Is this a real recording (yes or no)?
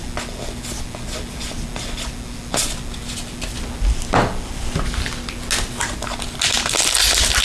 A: yes